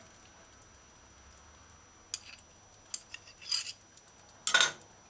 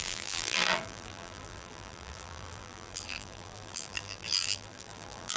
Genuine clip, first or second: first